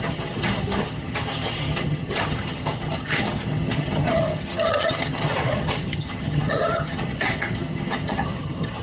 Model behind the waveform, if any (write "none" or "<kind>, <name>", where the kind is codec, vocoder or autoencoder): vocoder, HiFi-GAN